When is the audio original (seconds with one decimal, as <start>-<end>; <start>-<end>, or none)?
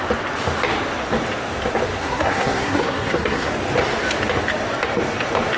0.0-2.0; 3.5-5.6